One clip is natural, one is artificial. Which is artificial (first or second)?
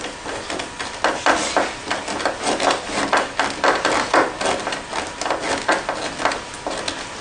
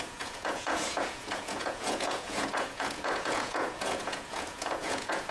second